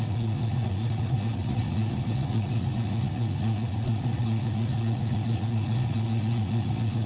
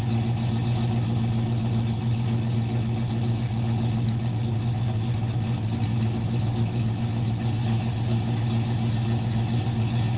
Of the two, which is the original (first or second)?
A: second